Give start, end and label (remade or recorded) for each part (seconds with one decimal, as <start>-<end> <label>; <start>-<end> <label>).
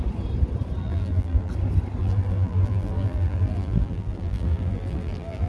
0.0-0.8 recorded; 0.8-1.5 remade; 1.5-2.0 recorded; 2.0-5.5 remade